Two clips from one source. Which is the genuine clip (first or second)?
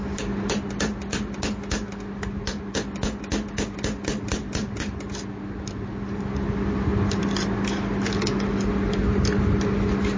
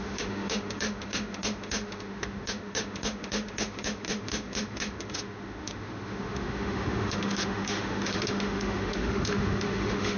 first